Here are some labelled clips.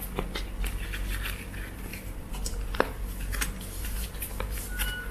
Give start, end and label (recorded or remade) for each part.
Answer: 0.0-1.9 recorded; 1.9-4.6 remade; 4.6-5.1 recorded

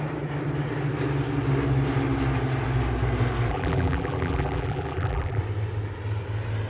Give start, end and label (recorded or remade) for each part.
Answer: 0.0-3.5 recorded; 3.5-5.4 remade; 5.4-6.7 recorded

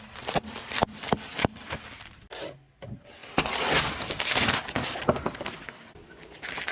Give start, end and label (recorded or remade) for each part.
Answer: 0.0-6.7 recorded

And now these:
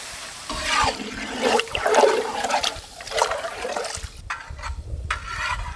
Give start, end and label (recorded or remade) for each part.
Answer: 0.0-3.7 remade; 3.7-5.8 recorded

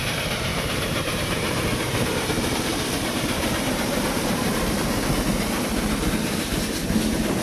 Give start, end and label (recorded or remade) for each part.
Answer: 0.0-0.5 recorded; 0.5-4.9 remade; 4.9-7.4 recorded

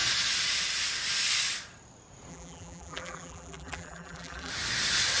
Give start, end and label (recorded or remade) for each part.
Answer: 0.0-2.3 recorded; 2.3-4.5 remade; 4.5-5.2 recorded

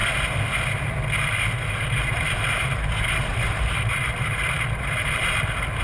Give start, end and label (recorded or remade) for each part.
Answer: 0.0-1.7 recorded; 1.7-5.8 remade